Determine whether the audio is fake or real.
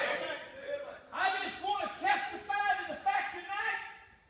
fake